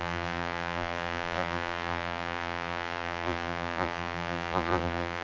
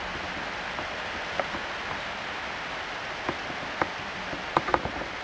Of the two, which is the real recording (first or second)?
second